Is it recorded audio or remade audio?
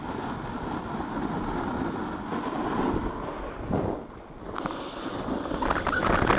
recorded